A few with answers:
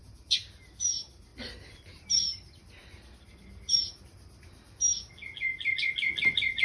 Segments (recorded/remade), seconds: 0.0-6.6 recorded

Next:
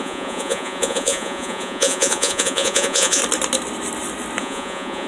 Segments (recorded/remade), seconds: 0.0-3.2 remade; 3.2-4.4 recorded; 4.4-5.1 remade